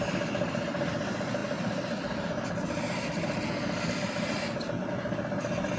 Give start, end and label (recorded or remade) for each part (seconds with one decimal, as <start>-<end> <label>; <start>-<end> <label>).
0.0-5.8 recorded